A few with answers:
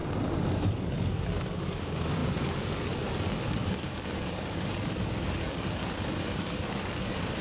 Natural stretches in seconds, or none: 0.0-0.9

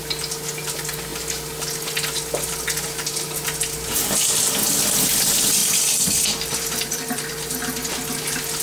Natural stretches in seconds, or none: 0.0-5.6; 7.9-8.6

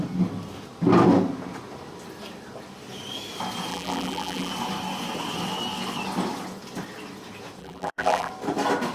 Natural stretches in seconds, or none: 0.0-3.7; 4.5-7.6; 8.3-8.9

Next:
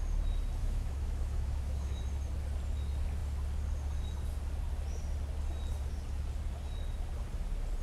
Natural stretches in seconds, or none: 0.0-0.6; 2.0-7.8

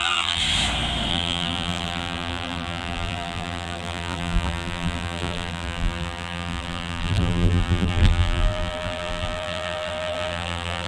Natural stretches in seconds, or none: 0.4-1.1

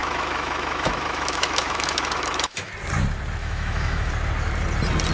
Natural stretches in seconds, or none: 2.7-3.4; 4.1-5.1

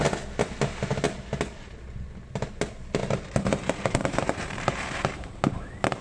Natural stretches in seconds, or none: 0.0-3.0; 5.3-6.0

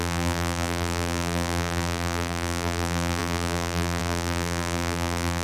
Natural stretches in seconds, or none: none